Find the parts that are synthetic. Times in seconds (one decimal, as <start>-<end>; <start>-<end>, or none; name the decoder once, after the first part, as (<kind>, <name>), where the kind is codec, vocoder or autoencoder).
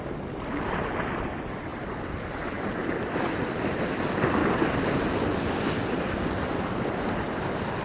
none